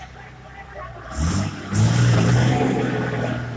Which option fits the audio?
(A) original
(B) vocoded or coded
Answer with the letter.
A